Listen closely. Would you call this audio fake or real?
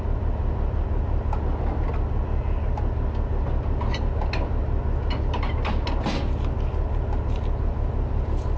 real